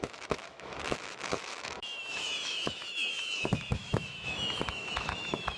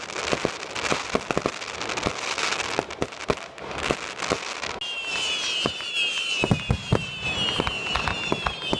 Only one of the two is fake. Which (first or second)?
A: first